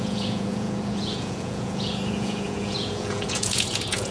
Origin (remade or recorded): remade